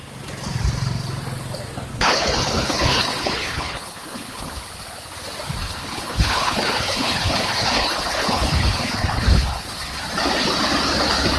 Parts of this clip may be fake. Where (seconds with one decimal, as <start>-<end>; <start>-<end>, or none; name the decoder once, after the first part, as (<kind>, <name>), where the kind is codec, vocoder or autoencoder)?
1.9-4.5 (codec, HILCodec); 5.6-10.0